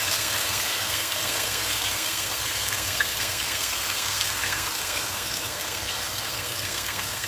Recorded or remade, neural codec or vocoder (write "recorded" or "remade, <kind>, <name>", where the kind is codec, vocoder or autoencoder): remade, codec, SNAC